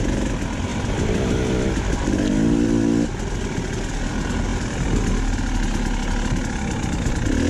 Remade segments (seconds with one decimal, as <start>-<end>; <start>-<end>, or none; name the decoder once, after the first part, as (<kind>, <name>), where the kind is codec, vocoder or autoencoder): 0.7-2.3 (vocoder, BigVGAN v2); 4.5-5.0